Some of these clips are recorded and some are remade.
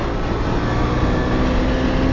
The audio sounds recorded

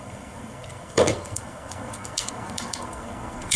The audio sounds remade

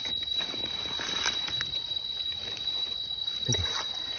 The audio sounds recorded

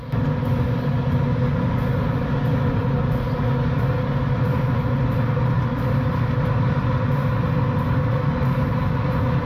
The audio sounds recorded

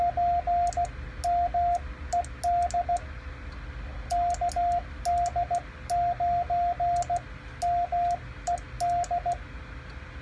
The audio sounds recorded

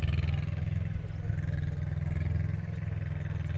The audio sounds recorded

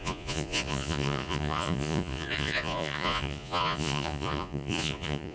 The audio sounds remade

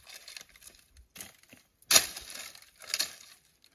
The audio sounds recorded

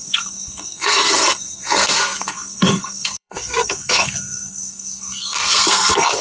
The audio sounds remade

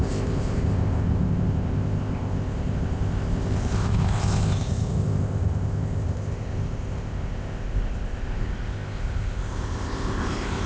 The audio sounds remade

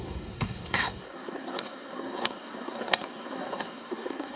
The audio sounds remade